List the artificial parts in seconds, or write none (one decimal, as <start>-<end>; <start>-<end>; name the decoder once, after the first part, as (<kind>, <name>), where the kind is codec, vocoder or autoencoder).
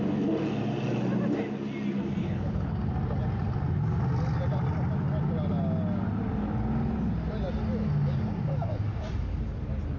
2.2-2.8 (codec, HILCodec)